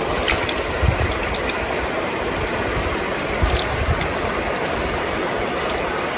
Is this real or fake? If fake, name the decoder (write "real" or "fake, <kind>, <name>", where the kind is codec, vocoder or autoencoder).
real